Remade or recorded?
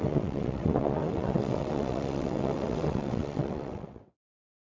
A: remade